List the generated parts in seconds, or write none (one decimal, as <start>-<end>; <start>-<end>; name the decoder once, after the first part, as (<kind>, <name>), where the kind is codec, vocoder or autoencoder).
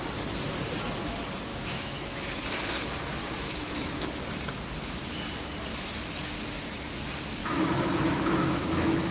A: 1.5-2.2 (autoencoder, DAC-VAE); 3.2-4.2; 7.4-9.1